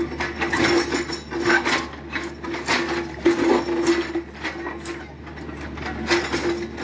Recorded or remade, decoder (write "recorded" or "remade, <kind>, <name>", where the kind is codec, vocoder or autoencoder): recorded